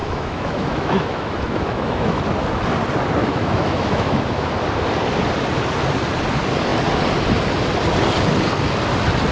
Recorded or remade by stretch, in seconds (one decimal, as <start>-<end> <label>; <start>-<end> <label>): 0.0-2.2 remade; 2.2-3.2 recorded; 3.2-4.5 remade; 4.5-9.3 recorded